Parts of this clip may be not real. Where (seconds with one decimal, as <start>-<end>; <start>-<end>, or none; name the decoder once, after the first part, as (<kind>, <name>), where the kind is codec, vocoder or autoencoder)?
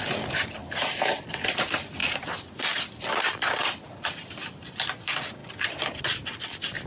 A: 0.0-0.6 (vocoder, BigVGAN v2); 1.5-5.4; 6.0-6.9